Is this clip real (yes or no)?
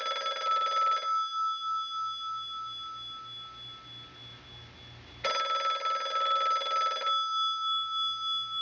yes